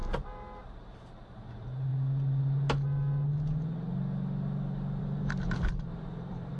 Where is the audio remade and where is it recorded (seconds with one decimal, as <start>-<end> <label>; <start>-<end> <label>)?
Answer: 0.0-0.6 recorded; 0.6-1.9 remade; 1.9-5.0 recorded; 5.0-6.6 remade